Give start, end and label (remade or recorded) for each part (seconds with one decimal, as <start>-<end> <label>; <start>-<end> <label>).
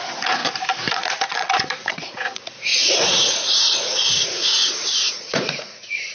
0.0-0.4 remade; 0.4-0.9 recorded; 0.9-4.6 remade; 4.6-5.1 recorded; 5.1-6.1 remade